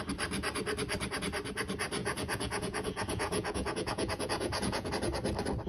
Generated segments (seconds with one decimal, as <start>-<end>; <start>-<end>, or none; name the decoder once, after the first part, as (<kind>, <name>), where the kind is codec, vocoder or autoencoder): 2.0-4.9 (vocoder, Vocos)